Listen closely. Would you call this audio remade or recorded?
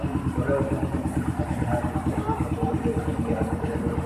remade